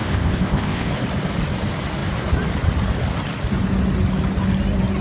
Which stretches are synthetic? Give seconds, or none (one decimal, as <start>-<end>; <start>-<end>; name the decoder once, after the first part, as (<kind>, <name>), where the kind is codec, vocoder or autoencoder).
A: 0.0-0.9 (codec, ZipCodec)